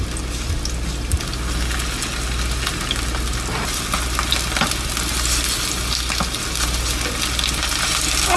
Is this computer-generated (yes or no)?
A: no